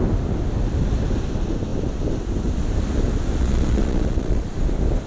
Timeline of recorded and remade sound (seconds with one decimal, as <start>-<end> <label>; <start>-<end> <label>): 0.0-3.4 recorded; 3.4-4.5 remade; 4.5-5.1 recorded